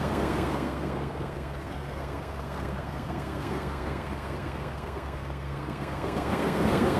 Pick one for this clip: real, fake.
fake